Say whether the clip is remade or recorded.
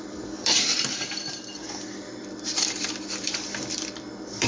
remade